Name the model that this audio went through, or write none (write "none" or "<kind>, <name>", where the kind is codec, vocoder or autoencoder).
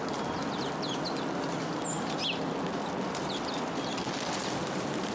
none